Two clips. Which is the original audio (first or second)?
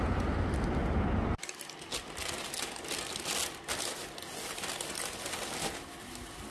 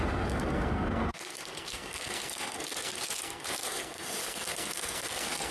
first